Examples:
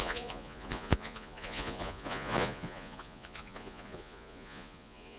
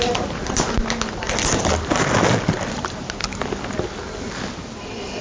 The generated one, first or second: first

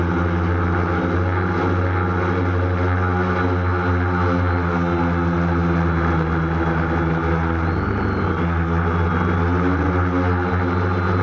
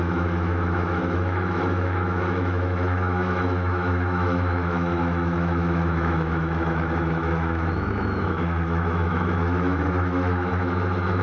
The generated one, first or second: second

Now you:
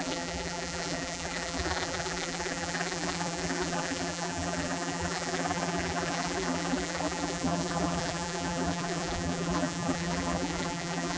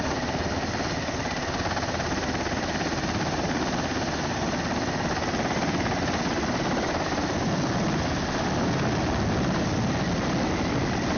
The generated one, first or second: first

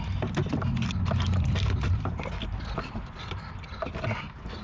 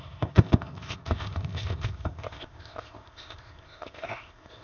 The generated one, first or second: second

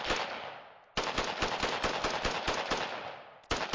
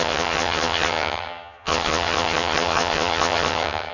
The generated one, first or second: second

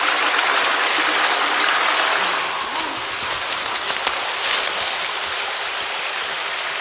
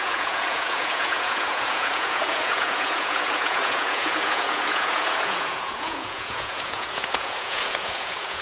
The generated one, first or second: second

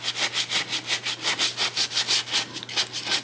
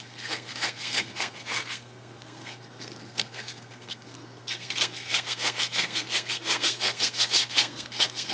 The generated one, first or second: second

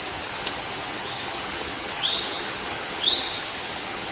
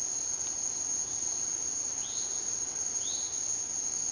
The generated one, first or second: first